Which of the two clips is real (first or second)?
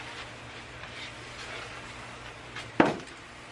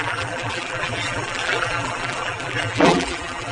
first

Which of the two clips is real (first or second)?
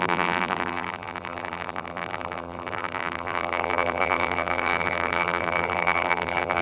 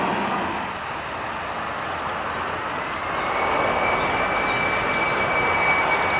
second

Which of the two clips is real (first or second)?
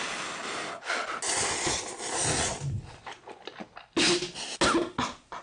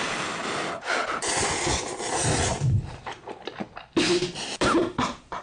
first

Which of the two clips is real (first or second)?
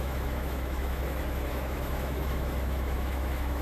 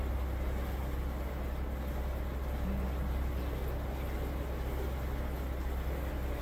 second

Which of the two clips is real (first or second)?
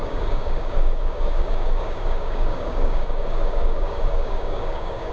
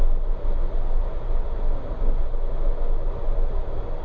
second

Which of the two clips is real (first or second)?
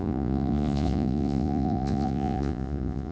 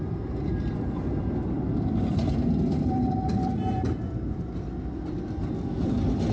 second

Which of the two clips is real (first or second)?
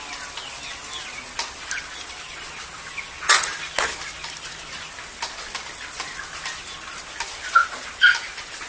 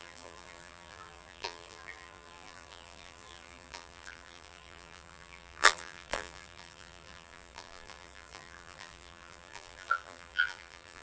first